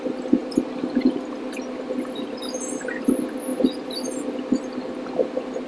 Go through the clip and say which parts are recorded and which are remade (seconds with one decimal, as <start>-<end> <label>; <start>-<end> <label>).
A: 0.0-5.7 recorded